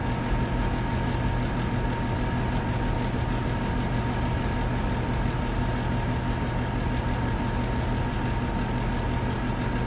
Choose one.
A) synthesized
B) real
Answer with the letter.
B